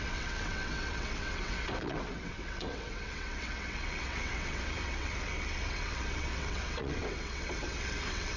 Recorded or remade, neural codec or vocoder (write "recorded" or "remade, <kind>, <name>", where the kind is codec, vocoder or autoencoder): remade, vocoder, WaveNeXt